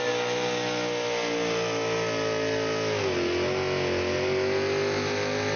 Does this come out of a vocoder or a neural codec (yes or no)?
no